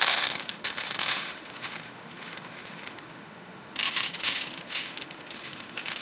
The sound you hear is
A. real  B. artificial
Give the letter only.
B